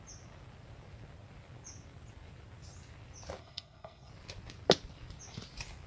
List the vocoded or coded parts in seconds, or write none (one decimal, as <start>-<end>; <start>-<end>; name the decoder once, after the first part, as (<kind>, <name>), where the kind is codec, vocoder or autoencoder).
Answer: 3.4-4.1 (codec, SNAC)